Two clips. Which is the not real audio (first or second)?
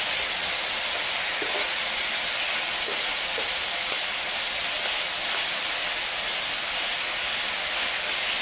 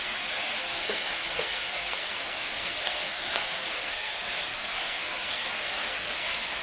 second